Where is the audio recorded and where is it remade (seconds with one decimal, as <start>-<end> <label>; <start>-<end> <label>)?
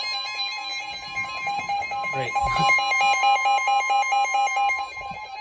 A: 0.0-5.4 recorded